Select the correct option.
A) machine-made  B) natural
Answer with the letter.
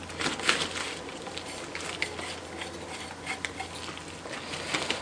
B